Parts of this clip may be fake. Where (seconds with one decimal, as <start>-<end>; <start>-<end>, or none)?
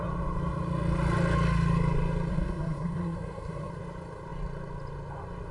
2.3-3.7